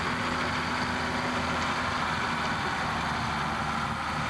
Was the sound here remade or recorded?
recorded